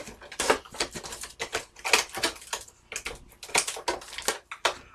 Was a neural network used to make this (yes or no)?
no